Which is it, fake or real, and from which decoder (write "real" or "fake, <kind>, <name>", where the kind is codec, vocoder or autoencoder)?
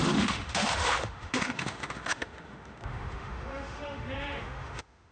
fake, autoencoder, DAC-VAE